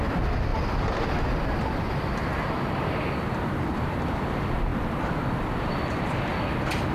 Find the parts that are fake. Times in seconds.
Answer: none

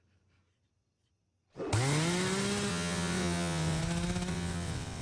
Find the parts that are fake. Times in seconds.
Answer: 2.7-3.8 (vocoder, WaveNeXt); 4.3-5.0

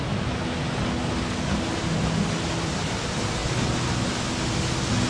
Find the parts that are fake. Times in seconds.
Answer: none

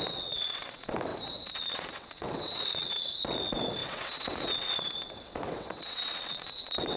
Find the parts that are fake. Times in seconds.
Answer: 0.0-7.0 (vocoder, WaveNeXt)

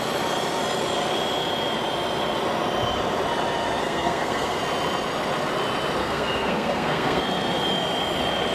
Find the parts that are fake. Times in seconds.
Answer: 3.8-4.6 (codec, SNAC); 6.0-7.2

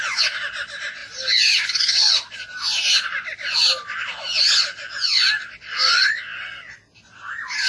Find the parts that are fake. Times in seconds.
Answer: none

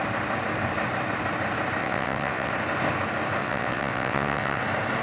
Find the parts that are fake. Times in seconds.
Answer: 1.8-2.5 (vocoder, WaveNeXt); 3.4-4.6

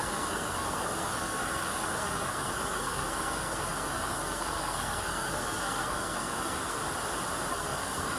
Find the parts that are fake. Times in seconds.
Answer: 0.0-6.8 (codec, SNAC); 7.5-8.2